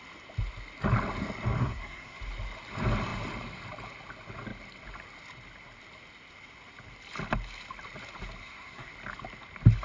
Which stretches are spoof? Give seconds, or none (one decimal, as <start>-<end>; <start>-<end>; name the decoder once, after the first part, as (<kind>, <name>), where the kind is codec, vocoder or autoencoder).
1.6-2.2 (codec, SNAC); 8.4-8.9